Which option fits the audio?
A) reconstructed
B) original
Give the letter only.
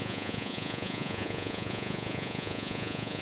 A